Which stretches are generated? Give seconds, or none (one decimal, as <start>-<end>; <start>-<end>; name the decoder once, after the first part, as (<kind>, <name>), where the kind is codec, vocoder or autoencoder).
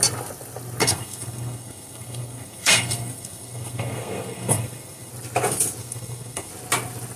0.8-5.1 (codec, SNAC); 5.8-6.5